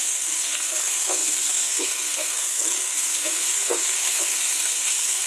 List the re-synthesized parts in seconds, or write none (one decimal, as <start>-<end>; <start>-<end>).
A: 0.0-5.3